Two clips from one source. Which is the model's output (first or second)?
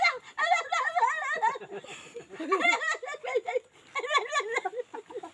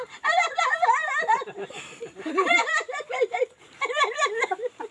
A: second